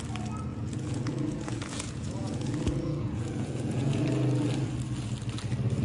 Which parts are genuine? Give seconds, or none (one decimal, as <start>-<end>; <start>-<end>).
0.0-0.5; 4.0-5.8